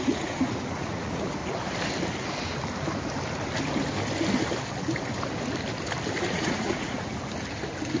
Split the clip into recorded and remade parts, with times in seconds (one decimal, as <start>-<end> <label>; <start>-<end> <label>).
0.0-1.4 remade; 1.4-6.2 recorded; 6.2-7.1 remade; 7.1-8.0 recorded